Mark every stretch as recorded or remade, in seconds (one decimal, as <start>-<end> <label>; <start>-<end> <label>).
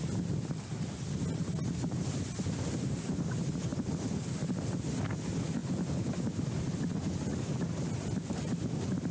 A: 0.0-9.1 recorded